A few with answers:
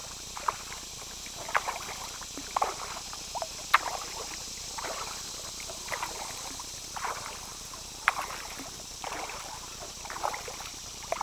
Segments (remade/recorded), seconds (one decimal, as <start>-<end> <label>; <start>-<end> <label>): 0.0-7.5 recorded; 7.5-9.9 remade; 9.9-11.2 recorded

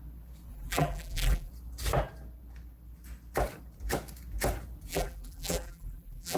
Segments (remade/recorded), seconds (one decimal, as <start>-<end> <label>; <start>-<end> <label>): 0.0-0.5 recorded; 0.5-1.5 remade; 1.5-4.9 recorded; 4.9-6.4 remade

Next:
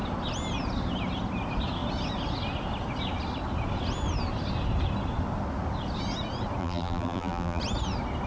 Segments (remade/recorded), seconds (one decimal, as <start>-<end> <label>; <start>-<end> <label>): 0.0-6.6 recorded; 6.6-7.6 remade; 7.6-8.3 recorded

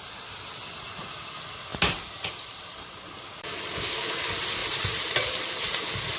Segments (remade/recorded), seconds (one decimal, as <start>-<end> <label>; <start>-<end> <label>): 0.0-1.7 recorded; 1.7-2.7 remade; 2.7-4.6 recorded; 4.6-5.3 remade; 5.3-6.2 recorded

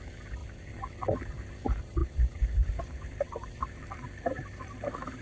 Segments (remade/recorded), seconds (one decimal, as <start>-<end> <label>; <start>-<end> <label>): 0.0-2.0 recorded; 2.0-5.2 remade

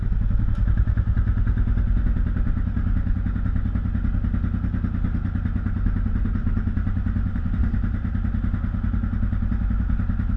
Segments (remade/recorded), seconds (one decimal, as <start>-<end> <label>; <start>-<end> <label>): 0.0-6.4 recorded; 6.4-7.5 remade; 7.5-10.4 recorded

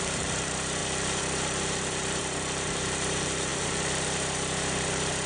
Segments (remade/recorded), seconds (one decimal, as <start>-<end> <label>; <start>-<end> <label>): 0.0-5.3 remade

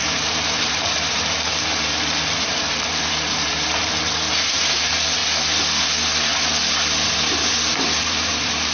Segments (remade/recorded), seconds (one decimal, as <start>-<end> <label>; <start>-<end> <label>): 0.0-5.2 remade; 5.2-7.7 recorded; 7.7-8.7 remade